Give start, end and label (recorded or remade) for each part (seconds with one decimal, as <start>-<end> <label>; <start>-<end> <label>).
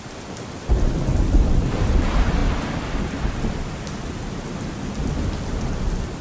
0.0-6.2 recorded